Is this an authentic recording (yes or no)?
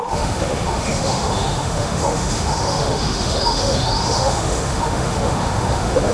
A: no